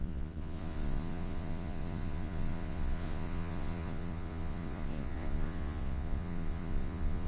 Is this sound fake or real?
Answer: fake